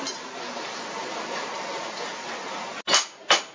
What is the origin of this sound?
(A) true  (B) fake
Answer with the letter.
A